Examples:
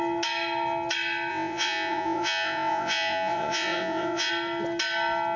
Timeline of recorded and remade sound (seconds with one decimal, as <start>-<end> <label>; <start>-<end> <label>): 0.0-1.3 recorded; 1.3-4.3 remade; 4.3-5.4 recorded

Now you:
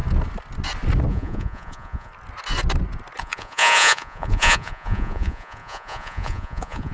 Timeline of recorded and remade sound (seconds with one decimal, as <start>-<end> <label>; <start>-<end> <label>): 0.0-1.1 recorded; 1.1-2.1 remade; 2.1-3.2 recorded; 3.2-6.9 remade

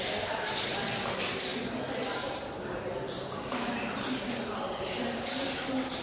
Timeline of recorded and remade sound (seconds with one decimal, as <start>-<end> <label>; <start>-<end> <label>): 0.0-6.0 recorded

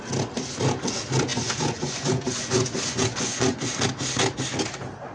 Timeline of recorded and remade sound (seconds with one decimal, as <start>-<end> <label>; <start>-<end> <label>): 0.0-1.3 recorded; 1.3-3.7 remade; 3.7-5.1 recorded

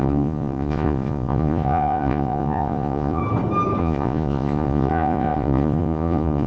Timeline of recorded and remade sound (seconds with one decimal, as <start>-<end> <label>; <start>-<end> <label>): 0.0-3.2 remade; 3.2-3.8 recorded; 3.8-6.5 remade

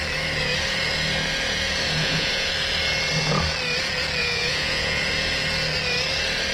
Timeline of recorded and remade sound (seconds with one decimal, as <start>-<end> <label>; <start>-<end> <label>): 0.0-2.0 recorded; 2.0-2.5 remade; 2.5-4.2 recorded; 4.2-5.0 remade; 5.0-6.5 recorded

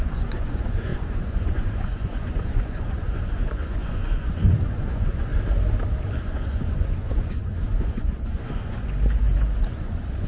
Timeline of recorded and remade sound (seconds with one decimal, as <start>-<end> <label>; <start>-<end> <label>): 0.0-5.3 remade; 5.3-6.2 recorded; 6.2-10.3 remade

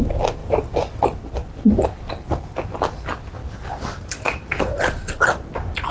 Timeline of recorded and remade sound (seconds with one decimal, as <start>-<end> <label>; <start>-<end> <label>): 0.0-5.9 recorded